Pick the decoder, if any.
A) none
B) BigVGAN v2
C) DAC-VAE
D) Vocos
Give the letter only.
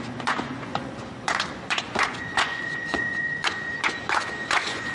D